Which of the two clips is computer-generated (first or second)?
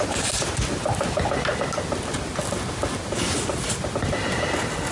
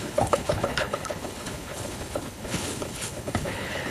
second